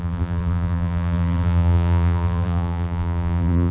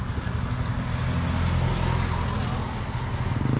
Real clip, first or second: second